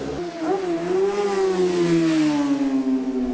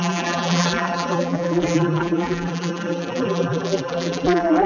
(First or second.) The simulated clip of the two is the second